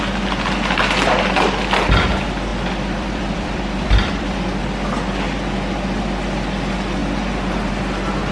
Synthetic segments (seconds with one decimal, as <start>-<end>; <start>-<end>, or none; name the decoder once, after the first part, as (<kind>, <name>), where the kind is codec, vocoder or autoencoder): 2.5-4.6 (vocoder, BigVGAN v2)